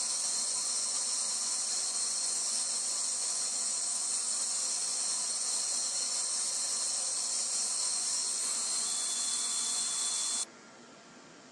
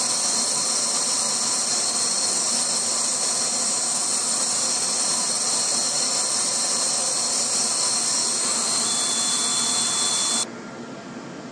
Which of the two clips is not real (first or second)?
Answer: first